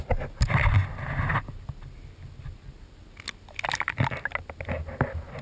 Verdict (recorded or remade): recorded